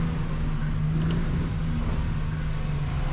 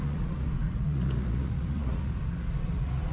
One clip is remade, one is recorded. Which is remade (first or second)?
second